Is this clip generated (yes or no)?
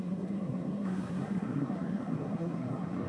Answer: yes